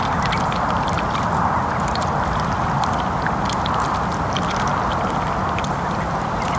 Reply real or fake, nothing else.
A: real